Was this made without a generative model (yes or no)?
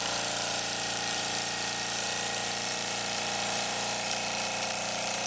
no